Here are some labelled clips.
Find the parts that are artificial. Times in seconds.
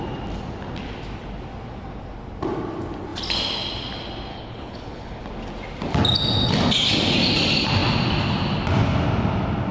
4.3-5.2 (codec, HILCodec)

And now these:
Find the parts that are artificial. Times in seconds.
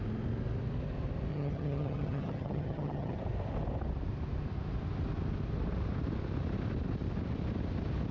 1.3-3.2 (vocoder, HiFi-GAN)